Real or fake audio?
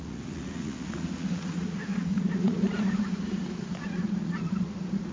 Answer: fake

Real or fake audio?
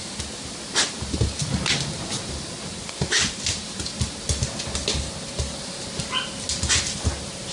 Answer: real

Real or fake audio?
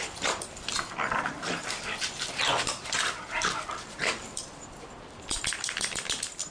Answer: fake